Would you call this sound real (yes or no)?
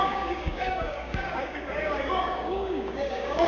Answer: no